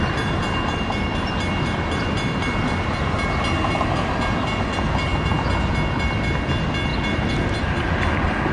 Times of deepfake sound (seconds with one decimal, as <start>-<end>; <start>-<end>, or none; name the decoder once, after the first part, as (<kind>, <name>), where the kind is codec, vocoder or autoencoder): none